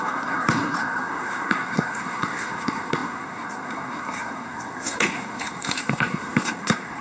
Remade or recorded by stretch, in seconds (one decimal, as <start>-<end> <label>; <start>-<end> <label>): 0.0-7.0 remade